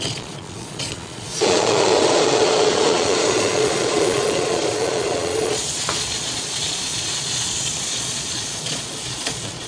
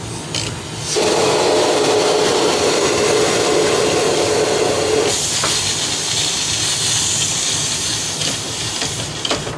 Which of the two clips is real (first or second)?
second